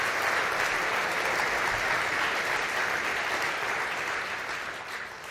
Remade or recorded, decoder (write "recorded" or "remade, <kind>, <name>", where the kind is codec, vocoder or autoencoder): recorded